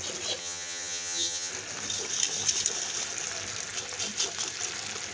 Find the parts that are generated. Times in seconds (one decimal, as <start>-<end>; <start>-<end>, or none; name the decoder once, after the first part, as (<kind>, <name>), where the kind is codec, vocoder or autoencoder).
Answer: 0.4-1.5 (vocoder, HiFi-GAN)